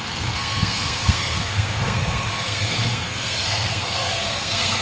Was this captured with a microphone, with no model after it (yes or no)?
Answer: no